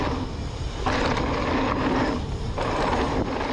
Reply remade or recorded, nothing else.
recorded